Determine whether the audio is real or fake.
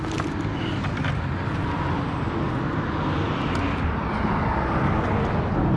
real